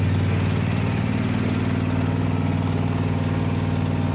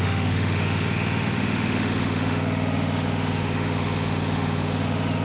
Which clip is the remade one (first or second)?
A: second